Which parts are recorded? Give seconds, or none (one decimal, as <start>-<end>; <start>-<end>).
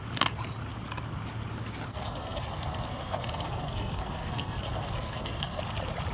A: 0.0-1.9; 5.6-6.1